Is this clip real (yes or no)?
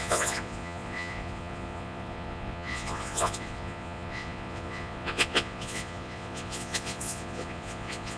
no